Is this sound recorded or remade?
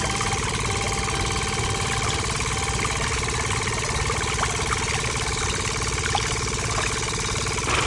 recorded